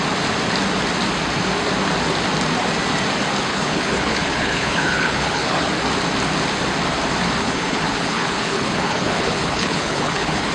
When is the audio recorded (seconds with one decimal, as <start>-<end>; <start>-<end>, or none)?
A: 0.0-3.5; 5.7-7.4